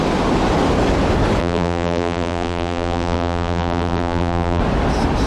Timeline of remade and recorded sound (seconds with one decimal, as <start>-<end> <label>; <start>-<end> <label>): 0.0-1.4 recorded; 1.4-4.6 remade; 4.6-5.3 recorded